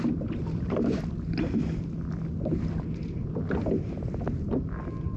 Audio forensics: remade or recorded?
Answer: recorded